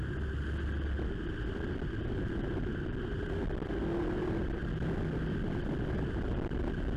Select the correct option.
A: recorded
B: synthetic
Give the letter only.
A